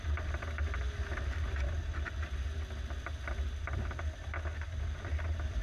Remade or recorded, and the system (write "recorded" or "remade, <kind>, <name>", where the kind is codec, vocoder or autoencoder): recorded